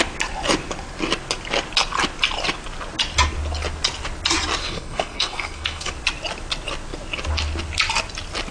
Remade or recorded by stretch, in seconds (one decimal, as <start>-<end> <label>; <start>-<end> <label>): 0.0-4.6 recorded; 4.6-5.9 remade; 5.9-8.5 recorded